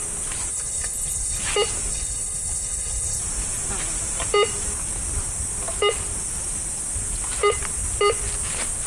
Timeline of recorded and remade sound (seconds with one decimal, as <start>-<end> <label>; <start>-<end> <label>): 0.0-0.5 recorded; 0.5-1.4 remade; 1.4-1.9 recorded; 1.9-3.2 remade; 3.2-8.9 recorded